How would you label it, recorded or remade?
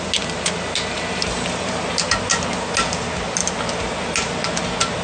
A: recorded